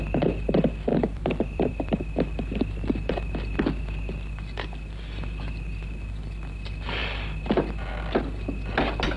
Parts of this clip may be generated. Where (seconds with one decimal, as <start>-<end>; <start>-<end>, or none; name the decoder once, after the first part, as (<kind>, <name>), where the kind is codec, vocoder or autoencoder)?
0.9-2.1 (vocoder, BigVGAN v2)